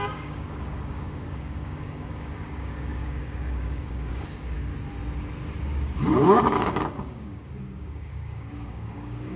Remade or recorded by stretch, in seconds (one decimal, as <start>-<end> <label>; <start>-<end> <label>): 0.0-4.7 remade; 4.7-5.6 recorded; 5.6-9.4 remade